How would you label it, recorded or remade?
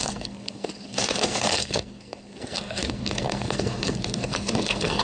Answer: remade